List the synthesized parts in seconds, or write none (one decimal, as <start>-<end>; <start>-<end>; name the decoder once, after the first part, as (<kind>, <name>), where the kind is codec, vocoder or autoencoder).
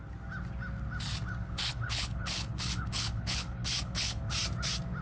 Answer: 1.7-4.2 (codec, HILCodec)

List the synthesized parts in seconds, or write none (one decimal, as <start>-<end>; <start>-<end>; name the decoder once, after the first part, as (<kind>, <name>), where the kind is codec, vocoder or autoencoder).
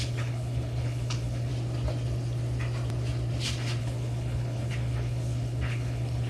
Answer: 0.0-1.5 (codec, HILCodec); 3.8-6.3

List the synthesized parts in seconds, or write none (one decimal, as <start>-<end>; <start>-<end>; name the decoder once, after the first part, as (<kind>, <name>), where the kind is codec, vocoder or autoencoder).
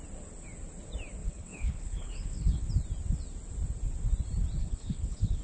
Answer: 1.2-2.7 (codec, HILCodec); 4.6-5.4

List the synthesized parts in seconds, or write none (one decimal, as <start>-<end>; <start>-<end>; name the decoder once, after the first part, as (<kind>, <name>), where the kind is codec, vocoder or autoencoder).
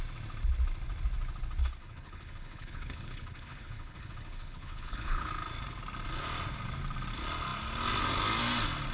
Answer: 1.8-5.3 (codec, HILCodec)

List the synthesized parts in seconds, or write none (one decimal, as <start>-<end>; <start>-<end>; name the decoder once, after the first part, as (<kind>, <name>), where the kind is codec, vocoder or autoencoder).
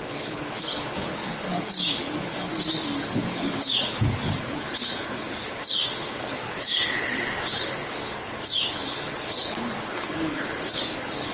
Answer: 0.0-2.5 (codec, HILCodec); 3.1-11.3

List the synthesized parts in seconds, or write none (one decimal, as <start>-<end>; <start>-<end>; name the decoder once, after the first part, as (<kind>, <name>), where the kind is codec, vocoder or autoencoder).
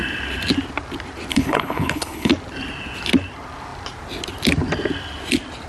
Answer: 1.3-2.3 (codec, HILCodec)